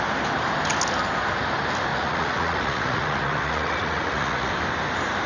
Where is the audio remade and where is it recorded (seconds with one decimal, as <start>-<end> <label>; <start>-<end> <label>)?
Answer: 0.0-1.9 recorded; 1.9-4.5 remade; 4.5-5.3 recorded